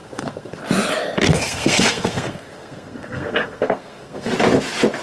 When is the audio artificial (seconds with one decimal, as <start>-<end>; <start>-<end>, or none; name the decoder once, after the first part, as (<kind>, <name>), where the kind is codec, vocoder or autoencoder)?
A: 0.0-0.6 (codec, SNAC); 1.3-4.3